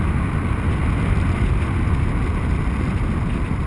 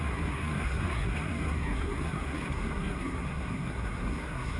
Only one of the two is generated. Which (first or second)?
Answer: second